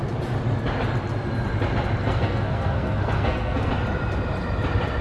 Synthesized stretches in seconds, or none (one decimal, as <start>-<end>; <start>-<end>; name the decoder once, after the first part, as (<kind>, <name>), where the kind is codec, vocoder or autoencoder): 2.0-3.7 (codec, SNAC)